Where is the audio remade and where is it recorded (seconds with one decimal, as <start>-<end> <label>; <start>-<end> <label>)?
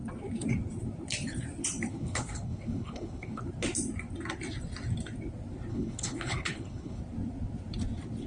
0.0-1.9 recorded; 1.9-3.4 remade; 3.4-5.7 recorded; 5.7-7.0 remade; 7.0-8.3 recorded